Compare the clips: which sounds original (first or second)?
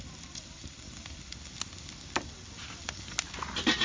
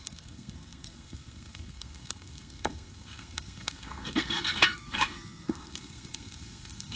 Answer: first